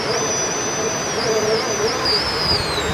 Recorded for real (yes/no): yes